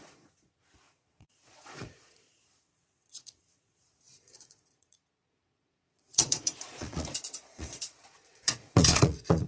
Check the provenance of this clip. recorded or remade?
remade